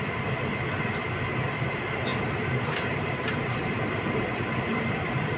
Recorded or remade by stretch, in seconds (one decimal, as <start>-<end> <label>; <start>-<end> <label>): 0.0-2.1 recorded; 2.1-5.4 remade